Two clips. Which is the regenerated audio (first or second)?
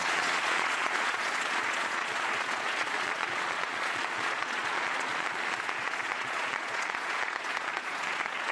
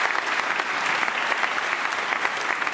first